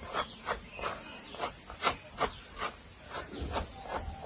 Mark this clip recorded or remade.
recorded